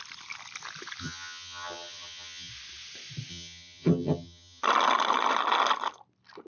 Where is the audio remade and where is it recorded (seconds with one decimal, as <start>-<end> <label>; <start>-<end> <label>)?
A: 0.0-1.0 recorded; 1.0-2.5 remade; 2.5-3.3 recorded; 3.3-4.6 remade; 4.6-6.5 recorded